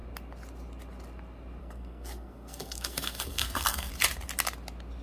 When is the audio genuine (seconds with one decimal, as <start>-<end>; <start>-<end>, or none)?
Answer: 0.0-1.6; 3.9-5.0